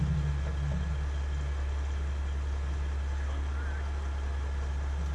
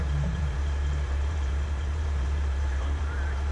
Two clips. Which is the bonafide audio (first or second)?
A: first